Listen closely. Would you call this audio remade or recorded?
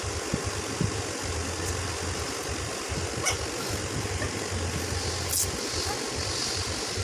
recorded